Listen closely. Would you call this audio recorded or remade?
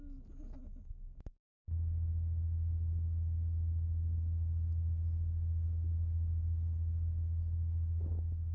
recorded